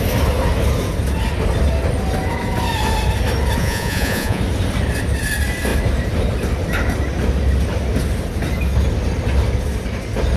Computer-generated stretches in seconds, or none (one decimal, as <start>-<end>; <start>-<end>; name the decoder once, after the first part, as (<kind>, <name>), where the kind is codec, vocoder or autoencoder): 3.6-4.4 (vocoder, Vocos)